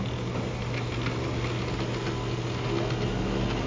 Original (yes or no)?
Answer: yes